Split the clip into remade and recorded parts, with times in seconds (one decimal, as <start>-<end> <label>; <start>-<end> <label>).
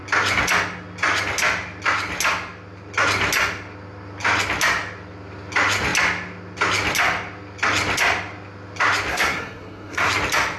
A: 0.0-9.1 recorded; 9.1-10.1 remade; 10.1-10.6 recorded